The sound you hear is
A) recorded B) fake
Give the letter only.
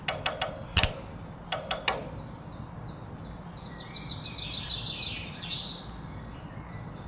A